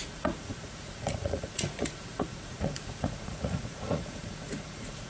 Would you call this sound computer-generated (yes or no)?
yes